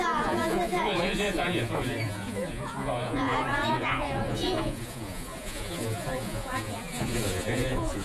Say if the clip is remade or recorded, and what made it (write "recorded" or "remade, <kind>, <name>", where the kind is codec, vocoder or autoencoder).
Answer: remade, vocoder, Vocos